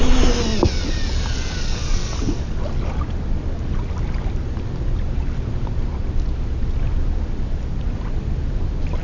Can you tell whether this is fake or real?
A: real